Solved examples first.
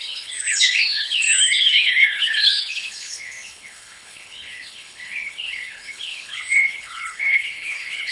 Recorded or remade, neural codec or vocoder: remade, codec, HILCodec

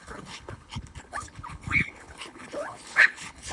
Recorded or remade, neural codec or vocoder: remade, codec, HILCodec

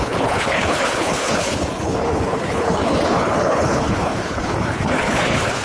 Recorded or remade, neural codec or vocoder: remade, codec, HILCodec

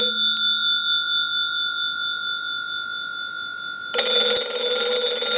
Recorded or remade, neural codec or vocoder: recorded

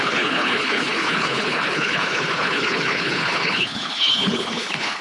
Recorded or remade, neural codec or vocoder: remade, codec, HILCodec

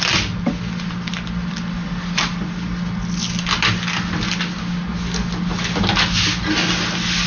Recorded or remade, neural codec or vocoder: recorded